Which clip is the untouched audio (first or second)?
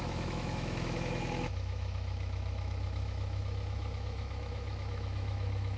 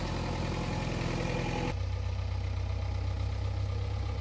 second